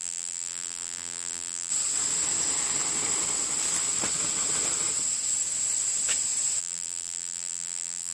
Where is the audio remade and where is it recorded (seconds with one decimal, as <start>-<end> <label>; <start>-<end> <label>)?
0.0-1.7 remade; 1.7-6.6 recorded; 6.6-8.1 remade